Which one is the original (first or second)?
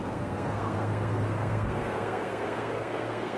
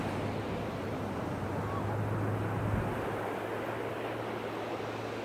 second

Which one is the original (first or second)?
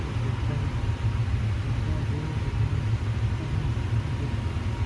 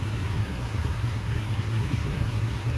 first